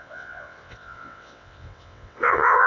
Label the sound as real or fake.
fake